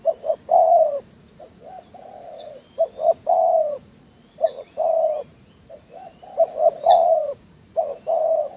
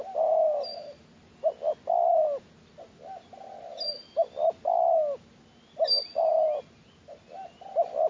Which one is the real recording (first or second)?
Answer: second